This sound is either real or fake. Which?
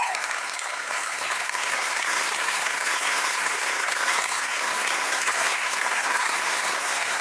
fake